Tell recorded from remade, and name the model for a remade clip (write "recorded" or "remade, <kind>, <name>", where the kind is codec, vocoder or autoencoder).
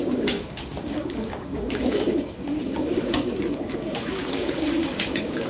remade, codec, DAC